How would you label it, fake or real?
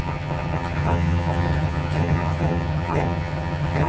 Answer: fake